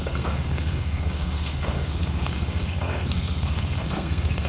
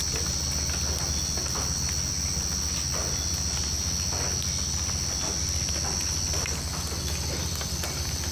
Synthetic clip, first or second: first